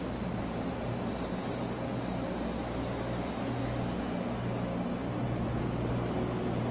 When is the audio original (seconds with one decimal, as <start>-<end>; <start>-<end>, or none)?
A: 0.0-6.7